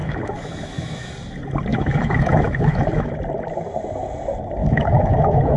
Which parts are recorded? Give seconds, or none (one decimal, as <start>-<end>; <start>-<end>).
1.1-1.7; 3.1-4.6